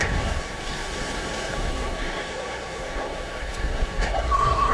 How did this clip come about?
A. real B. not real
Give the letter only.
B